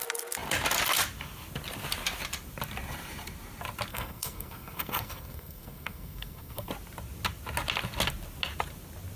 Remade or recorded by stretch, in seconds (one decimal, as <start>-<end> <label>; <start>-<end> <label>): 0.0-3.9 recorded; 3.9-6.7 remade; 6.7-9.2 recorded